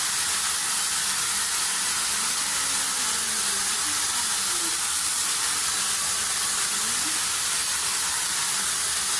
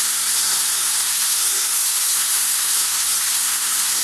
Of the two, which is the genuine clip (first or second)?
first